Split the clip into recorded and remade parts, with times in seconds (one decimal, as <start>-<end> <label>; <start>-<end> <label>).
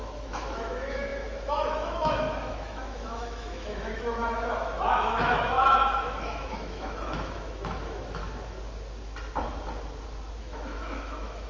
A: 0.0-8.2 remade; 8.2-10.4 recorded; 10.4-11.5 remade